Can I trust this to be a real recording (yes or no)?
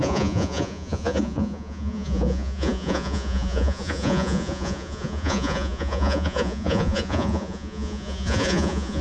no